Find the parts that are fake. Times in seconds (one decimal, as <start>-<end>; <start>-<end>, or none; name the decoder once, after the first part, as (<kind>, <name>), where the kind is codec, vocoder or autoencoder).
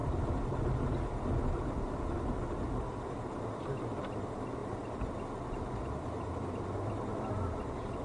none